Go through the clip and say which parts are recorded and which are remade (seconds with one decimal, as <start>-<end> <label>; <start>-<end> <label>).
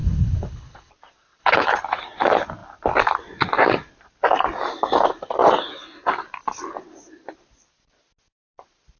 0.0-0.9 remade; 0.9-1.4 recorded; 1.4-2.0 remade; 2.0-9.0 recorded